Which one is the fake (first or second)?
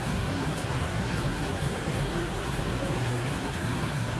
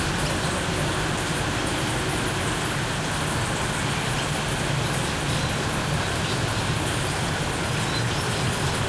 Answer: first